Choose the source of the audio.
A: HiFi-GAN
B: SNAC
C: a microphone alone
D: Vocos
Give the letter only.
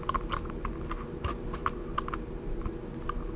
C